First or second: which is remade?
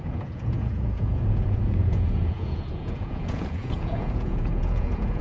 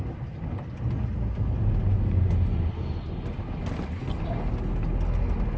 first